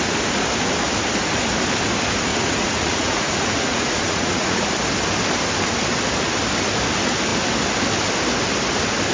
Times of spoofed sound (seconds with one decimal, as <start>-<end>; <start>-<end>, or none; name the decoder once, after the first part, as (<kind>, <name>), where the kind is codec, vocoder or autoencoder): 2.3-4.7 (vocoder, Vocos)